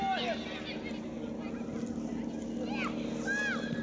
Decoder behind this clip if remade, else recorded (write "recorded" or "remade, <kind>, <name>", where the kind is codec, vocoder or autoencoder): recorded